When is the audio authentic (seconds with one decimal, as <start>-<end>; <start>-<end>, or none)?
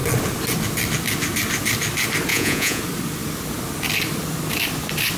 0.0-2.3; 2.8-5.2